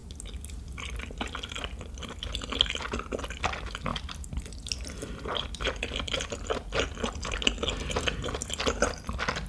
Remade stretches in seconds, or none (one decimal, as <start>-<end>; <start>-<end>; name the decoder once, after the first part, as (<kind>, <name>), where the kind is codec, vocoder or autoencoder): 3.9-6.5 (vocoder, BigVGAN v2)